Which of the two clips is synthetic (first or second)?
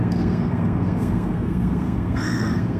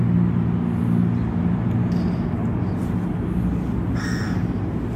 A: first